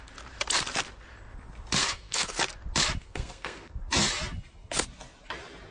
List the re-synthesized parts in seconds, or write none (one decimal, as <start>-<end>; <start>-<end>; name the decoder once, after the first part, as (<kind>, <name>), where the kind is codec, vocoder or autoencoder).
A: 1.8-2.4 (codec, SNAC); 3.0-3.8